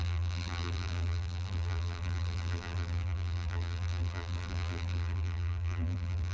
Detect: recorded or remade remade